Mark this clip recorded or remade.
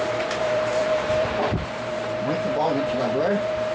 remade